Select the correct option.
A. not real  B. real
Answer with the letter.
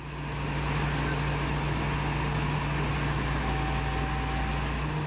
B